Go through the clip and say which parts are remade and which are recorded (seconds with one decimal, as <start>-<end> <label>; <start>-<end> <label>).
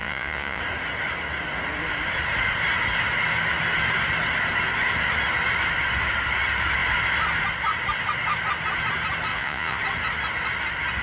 0.0-0.6 remade; 0.6-9.3 recorded; 9.3-9.8 remade; 9.8-11.0 recorded